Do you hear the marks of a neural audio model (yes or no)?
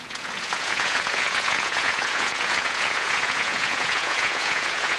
yes